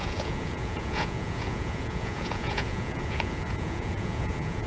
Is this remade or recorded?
remade